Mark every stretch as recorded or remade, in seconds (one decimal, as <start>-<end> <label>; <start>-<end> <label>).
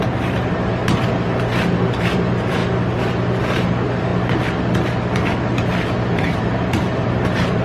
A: 0.0-0.8 remade; 0.8-2.0 recorded; 2.0-2.6 remade; 2.6-3.4 recorded; 3.4-4.1 remade; 4.1-6.1 recorded; 6.1-7.6 remade